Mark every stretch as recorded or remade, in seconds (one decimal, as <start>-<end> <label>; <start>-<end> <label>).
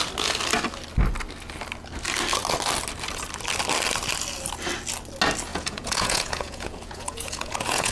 0.0-5.5 recorded; 5.5-7.9 remade